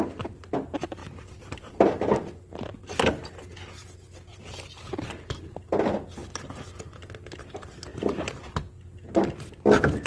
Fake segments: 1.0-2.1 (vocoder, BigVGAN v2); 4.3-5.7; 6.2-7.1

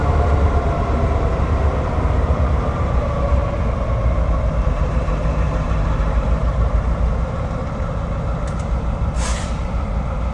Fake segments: 0.0-3.4 (vocoder, BigVGAN v2); 4.7-7.6; 8.5-10.3

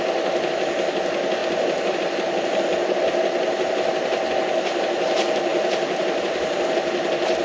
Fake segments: none